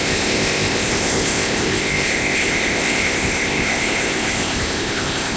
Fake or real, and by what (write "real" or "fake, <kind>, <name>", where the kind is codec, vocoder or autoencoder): fake, codec, ZipCodec